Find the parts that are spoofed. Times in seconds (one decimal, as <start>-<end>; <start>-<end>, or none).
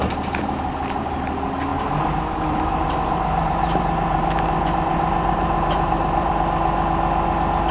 1.7-6.3